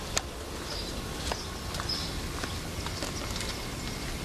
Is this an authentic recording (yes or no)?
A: yes